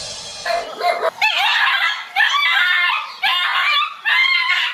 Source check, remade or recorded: recorded